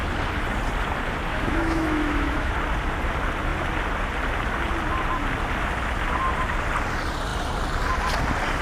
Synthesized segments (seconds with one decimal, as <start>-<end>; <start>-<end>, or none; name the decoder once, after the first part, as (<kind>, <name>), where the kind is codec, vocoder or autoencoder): 1.3-2.5 (autoencoder, DAC-VAE)